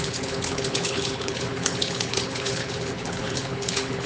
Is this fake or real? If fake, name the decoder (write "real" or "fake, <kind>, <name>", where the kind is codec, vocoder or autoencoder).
fake, codec, HILCodec